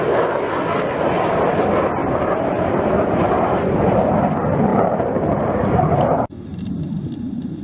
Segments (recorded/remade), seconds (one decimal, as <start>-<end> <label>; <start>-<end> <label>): 0.0-2.0 recorded; 2.0-3.9 remade; 3.9-4.7 recorded; 4.7-7.6 remade

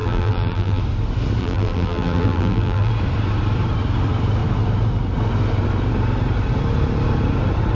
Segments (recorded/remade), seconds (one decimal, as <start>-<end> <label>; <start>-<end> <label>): 0.0-0.8 remade; 0.8-1.4 recorded; 1.4-2.9 remade; 2.9-7.7 recorded

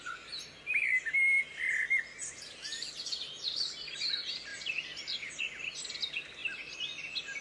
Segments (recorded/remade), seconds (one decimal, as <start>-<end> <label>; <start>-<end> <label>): 0.0-4.5 recorded; 4.5-5.4 remade; 5.4-7.4 recorded

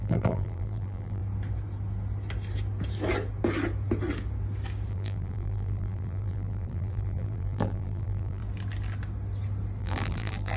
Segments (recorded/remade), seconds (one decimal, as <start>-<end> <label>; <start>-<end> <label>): 0.0-1.2 remade; 1.2-4.9 recorded; 4.9-8.4 remade; 8.4-9.8 recorded; 9.8-10.6 remade

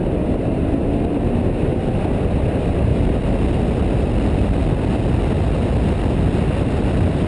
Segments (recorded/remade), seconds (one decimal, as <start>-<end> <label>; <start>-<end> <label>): 0.0-2.9 remade; 2.9-7.3 recorded

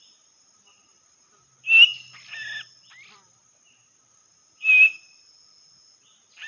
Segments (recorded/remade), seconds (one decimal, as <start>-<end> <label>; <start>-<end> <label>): 0.0-6.5 recorded

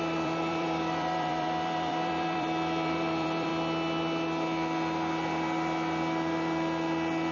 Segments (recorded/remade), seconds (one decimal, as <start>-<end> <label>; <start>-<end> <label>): 0.0-3.5 remade; 3.5-7.3 recorded